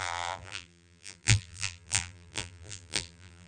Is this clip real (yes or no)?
no